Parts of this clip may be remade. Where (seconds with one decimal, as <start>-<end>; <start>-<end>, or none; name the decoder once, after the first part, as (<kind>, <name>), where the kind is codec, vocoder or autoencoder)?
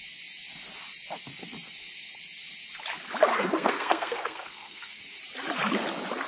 3.3-5.0 (codec, SNAC)